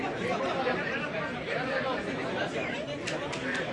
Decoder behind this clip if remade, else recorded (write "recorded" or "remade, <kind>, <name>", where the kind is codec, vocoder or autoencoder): remade, vocoder, BigVGAN v2